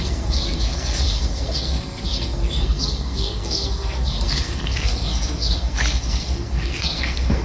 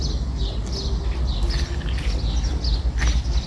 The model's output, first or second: first